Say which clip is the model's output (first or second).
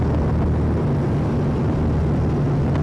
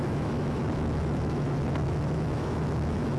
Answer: second